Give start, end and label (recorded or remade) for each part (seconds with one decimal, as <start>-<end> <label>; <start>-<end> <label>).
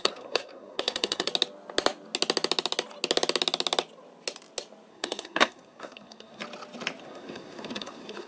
0.0-1.3 remade; 1.3-4.9 recorded; 4.9-6.4 remade; 6.4-7.0 recorded; 7.0-8.3 remade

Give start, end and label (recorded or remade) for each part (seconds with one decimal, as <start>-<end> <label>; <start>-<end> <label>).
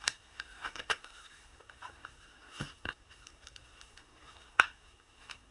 0.0-5.5 remade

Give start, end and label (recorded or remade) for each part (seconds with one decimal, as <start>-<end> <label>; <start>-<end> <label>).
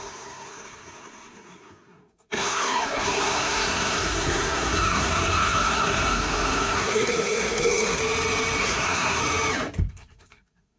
0.0-8.0 remade; 8.0-8.6 recorded; 8.6-9.2 remade; 9.2-9.9 recorded; 9.9-10.8 remade